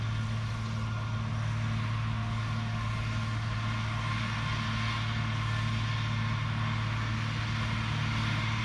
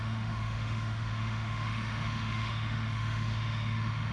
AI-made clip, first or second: second